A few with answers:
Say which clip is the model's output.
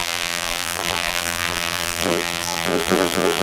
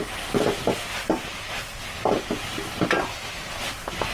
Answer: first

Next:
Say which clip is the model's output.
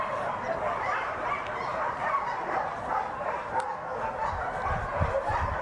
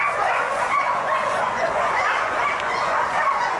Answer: second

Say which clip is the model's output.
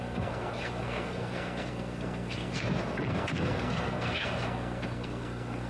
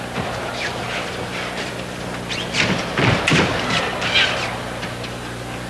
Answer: first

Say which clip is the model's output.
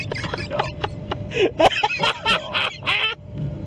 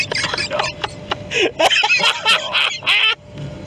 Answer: first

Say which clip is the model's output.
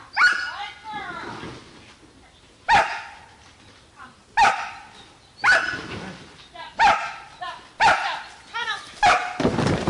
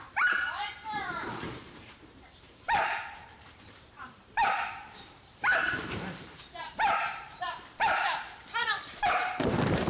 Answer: second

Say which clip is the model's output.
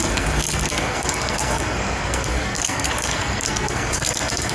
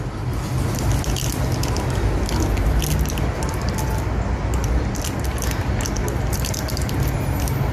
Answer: first